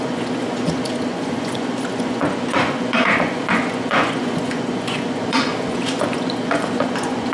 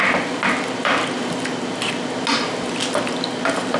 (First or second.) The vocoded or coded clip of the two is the first